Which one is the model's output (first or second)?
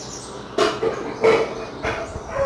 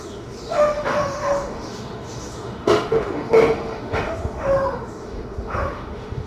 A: second